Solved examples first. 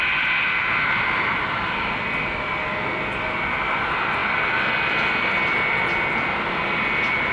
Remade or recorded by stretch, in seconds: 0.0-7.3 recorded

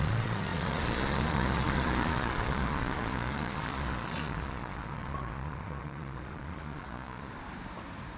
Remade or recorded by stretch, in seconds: 0.0-7.3 remade; 7.3-8.2 recorded

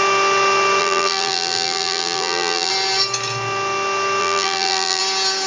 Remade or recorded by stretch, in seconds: 0.0-0.8 recorded; 0.8-2.7 remade; 2.7-4.2 recorded; 4.2-5.0 remade; 5.0-5.5 recorded

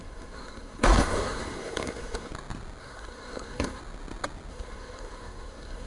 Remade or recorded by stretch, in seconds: 0.0-2.3 remade; 2.3-2.8 recorded; 2.8-3.8 remade; 3.8-4.5 recorded; 4.5-5.9 remade